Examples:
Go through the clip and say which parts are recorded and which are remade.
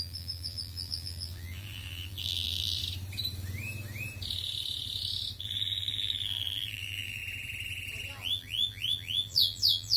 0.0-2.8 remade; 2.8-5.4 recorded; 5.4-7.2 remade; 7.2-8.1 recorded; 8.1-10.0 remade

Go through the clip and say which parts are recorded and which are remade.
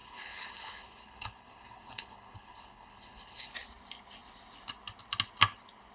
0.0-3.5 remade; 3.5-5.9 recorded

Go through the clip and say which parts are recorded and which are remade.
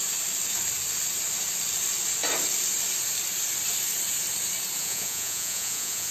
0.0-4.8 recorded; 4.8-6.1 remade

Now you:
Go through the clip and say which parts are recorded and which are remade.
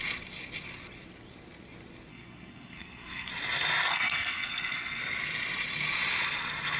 0.0-2.1 recorded; 2.1-3.3 remade; 3.3-3.9 recorded; 3.9-5.0 remade; 5.0-6.8 recorded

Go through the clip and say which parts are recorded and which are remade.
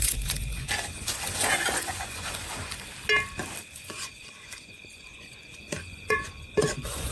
0.0-2.9 remade; 2.9-3.7 recorded; 3.7-7.1 remade